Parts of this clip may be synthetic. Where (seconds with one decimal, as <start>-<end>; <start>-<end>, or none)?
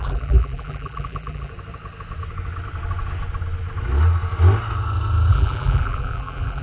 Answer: 0.0-1.5; 5.3-6.6